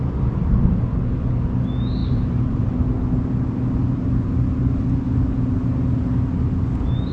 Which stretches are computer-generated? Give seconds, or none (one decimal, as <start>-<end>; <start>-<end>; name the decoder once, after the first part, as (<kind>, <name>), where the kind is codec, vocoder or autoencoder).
2.0-2.8 (vocoder, BigVGAN v2)